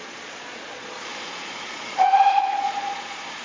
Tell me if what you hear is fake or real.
fake